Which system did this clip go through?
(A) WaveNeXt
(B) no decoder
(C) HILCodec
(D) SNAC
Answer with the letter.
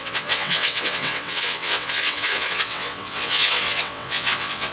A